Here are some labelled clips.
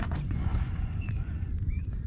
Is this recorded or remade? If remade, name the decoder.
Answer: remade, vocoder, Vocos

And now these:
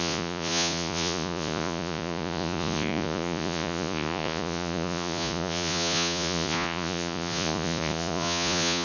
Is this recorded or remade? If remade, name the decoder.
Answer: remade, vocoder, Vocos